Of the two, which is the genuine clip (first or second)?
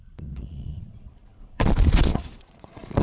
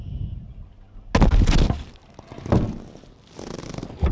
second